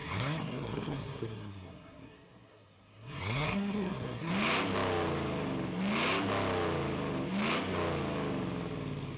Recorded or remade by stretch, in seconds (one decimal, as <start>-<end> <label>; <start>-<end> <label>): 0.0-4.3 remade; 4.3-9.2 recorded